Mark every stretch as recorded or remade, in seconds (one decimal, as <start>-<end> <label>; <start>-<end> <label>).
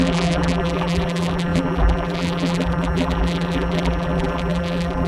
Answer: 0.0-5.1 remade